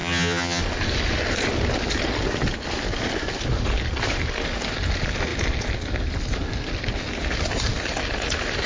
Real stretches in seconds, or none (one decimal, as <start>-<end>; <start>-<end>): 0.6-8.7